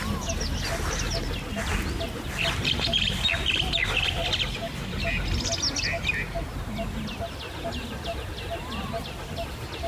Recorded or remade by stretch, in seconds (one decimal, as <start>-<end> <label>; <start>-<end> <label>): 0.0-9.9 recorded